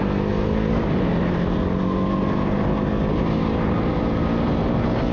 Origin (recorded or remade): recorded